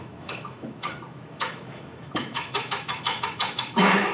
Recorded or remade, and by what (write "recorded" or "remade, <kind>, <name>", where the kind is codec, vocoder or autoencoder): remade, autoencoder, DAC-VAE